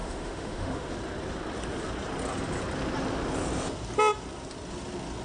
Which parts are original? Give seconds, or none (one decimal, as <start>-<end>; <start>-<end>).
0.9-5.2